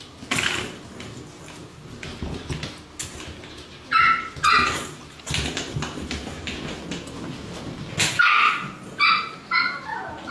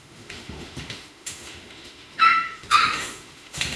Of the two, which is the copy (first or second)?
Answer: second